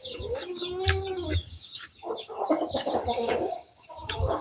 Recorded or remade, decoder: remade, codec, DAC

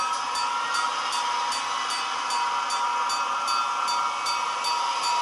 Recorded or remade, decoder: recorded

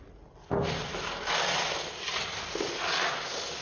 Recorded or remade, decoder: recorded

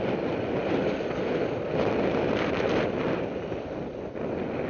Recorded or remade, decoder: recorded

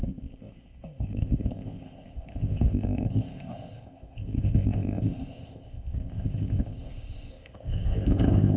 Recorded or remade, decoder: remade, codec, ZipCodec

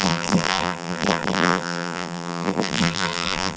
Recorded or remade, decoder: remade, vocoder, BigVGAN v2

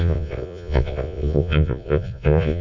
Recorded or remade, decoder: remade, vocoder, Vocos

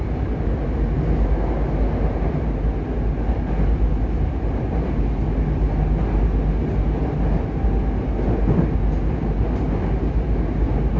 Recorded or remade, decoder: recorded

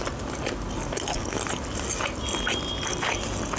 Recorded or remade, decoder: recorded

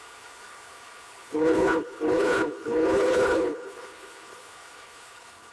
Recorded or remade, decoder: remade, codec, HILCodec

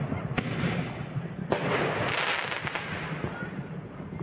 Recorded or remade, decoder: recorded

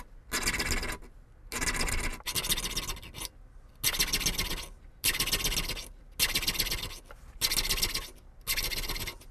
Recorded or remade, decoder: recorded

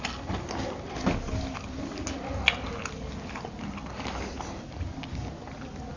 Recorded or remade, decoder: recorded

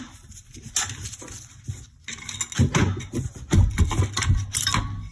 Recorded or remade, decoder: recorded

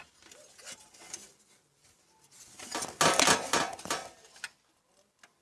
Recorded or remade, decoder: recorded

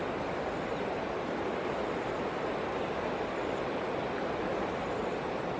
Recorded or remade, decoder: recorded